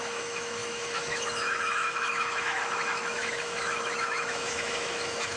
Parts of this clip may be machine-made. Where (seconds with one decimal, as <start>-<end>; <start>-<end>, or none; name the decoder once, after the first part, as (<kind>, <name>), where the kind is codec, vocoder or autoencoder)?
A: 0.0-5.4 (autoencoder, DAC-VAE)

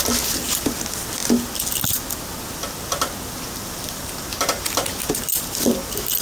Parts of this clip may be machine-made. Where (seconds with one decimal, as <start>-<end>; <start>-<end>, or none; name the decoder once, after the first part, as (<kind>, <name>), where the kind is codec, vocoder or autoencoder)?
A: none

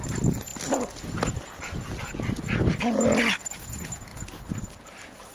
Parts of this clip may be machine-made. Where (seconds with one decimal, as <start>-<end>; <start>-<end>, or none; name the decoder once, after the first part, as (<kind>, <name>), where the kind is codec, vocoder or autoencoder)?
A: none